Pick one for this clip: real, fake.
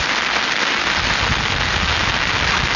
real